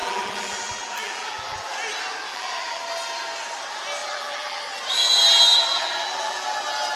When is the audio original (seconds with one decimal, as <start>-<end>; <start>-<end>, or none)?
1.7-2.3; 2.8-4.0; 4.6-5.7; 6.6-7.0